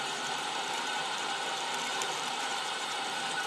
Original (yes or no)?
no